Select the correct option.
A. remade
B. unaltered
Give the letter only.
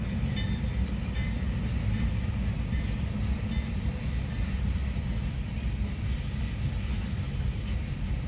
B